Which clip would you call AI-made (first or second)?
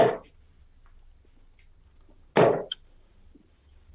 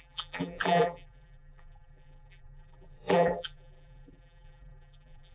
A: second